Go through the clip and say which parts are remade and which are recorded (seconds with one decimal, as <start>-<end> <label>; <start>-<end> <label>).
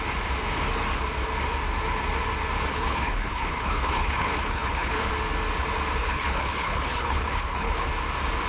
0.0-2.7 recorded; 2.7-5.1 remade; 5.1-6.0 recorded; 6.0-7.9 remade; 7.9-8.5 recorded